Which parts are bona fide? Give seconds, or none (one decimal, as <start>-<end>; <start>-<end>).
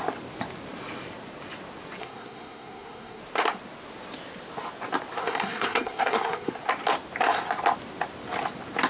0.0-2.0; 3.2-5.2; 6.5-8.9